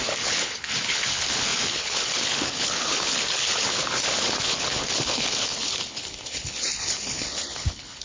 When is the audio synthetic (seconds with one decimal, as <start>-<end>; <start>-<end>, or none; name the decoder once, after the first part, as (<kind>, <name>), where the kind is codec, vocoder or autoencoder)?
0.0-8.0 (codec, HILCodec)